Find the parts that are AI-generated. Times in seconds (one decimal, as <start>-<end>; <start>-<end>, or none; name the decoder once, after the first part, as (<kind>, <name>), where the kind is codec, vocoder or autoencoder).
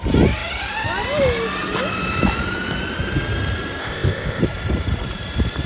3.8-4.4 (codec, ZipCodec)